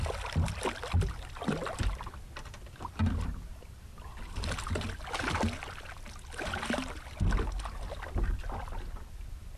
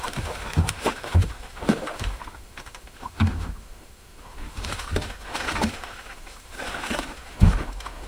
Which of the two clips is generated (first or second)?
second